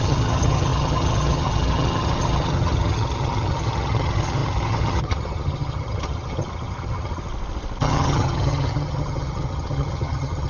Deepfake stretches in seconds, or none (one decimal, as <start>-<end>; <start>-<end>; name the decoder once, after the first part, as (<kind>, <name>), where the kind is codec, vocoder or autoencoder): 0.0-7.3 (vocoder, HiFi-GAN); 7.8-10.5